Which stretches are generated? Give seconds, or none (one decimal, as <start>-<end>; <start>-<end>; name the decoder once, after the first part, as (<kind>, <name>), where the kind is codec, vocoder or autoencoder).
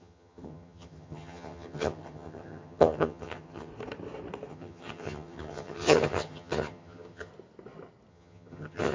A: 0.0-3.7 (vocoder, HiFi-GAN); 4.5-7.3; 8.1-8.9